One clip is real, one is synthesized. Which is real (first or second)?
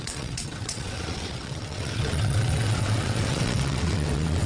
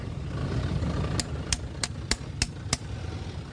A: second